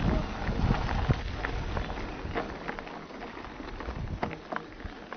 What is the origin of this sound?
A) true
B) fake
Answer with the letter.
A